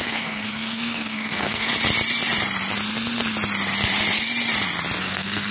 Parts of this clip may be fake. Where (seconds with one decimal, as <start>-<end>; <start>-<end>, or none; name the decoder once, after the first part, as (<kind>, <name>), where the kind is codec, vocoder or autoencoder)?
0.0-1.7 (codec, SNAC); 5.0-5.5